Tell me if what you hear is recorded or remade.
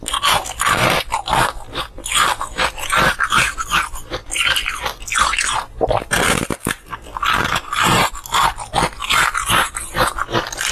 recorded